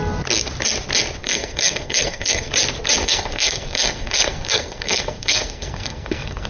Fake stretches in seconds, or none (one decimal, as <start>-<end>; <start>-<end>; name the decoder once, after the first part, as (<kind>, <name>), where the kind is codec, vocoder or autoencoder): 1.2-2.5 (codec, SNAC); 3.0-6.5